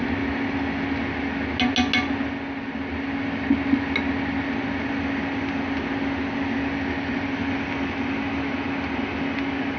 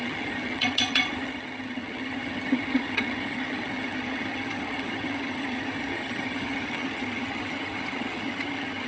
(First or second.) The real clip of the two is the first